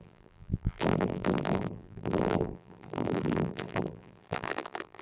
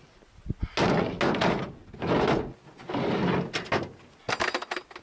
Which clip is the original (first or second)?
second